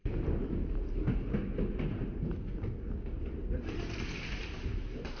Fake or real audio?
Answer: real